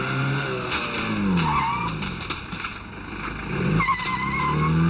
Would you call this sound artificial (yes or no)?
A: no